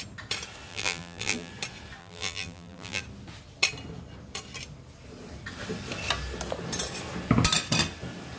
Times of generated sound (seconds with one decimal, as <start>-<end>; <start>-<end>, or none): 0.7-1.5; 2.0-3.0